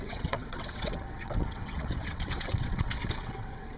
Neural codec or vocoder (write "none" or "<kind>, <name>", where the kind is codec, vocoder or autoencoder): vocoder, WaveNeXt